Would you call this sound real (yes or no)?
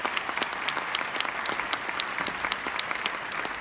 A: yes